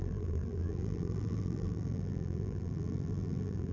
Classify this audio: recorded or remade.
remade